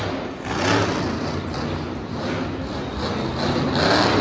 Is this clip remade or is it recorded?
recorded